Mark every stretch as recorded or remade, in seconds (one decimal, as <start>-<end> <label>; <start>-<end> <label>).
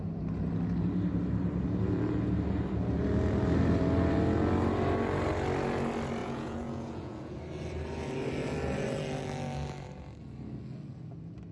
0.0-6.2 recorded; 6.2-7.4 remade; 7.4-11.5 recorded